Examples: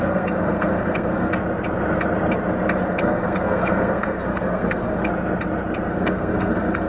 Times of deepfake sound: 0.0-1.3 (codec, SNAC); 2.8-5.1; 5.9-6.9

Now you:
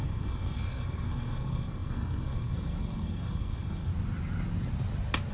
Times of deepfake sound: 0.0-3.9 (codec, SNAC)

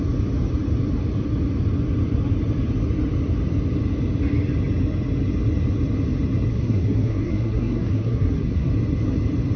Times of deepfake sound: 6.5-8.7 (codec, SNAC)